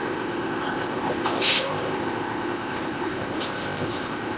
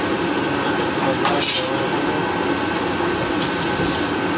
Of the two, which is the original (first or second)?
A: second